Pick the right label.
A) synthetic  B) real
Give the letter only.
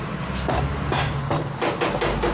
B